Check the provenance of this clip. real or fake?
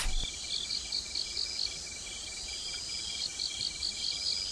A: real